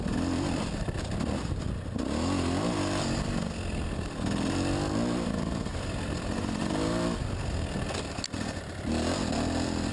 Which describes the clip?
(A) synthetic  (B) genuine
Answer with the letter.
B